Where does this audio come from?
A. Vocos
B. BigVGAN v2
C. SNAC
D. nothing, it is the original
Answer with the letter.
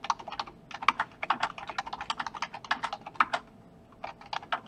D